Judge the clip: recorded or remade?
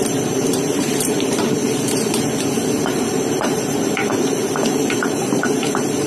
remade